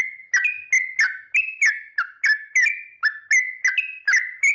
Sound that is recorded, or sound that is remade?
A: recorded